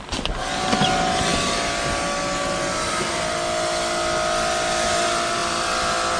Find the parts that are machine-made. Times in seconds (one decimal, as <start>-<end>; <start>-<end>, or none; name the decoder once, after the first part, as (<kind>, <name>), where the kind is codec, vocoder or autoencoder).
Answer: none